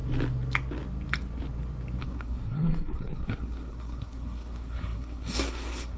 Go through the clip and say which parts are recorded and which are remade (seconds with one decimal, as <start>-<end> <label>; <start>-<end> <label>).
0.0-2.0 recorded; 2.0-6.0 remade